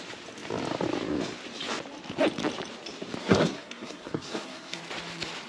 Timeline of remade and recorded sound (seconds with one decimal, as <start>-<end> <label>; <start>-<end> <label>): 0.0-3.2 recorded; 3.2-4.8 remade; 4.8-5.5 recorded